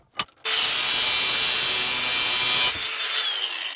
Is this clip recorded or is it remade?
recorded